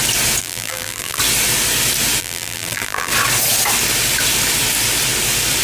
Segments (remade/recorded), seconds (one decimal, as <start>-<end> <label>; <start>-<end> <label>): 0.0-0.4 recorded; 0.4-1.2 remade; 1.2-2.2 recorded; 2.2-3.1 remade; 3.1-5.6 recorded